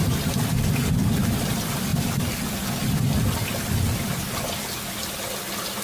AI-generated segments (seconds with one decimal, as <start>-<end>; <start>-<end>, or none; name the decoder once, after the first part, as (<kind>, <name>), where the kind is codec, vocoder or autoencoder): 1.9-2.7 (vocoder, BigVGAN v2)